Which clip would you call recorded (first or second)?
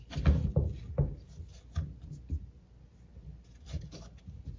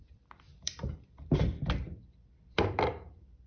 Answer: first